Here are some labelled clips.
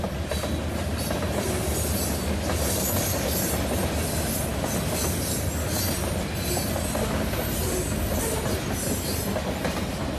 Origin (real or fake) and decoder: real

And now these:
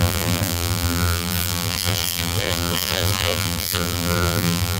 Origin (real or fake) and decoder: fake, vocoder, BigVGAN v2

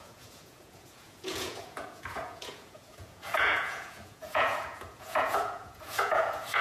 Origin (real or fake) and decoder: fake, vocoder, Vocos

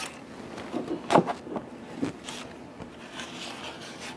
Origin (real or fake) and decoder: real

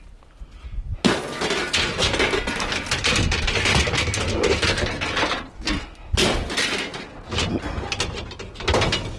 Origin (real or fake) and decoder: real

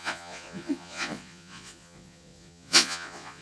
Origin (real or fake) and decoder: fake, vocoder, Vocos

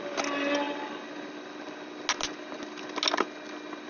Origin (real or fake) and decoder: real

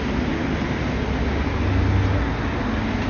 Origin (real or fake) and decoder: real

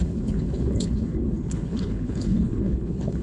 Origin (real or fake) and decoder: fake, codec, HILCodec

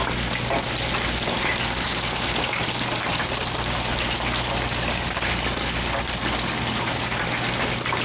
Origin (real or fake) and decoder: real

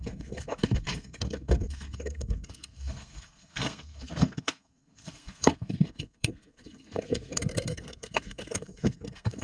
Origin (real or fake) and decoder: fake, codec, SNAC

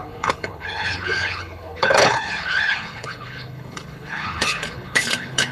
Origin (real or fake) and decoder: fake, codec, HILCodec